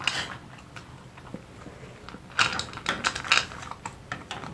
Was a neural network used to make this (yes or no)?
no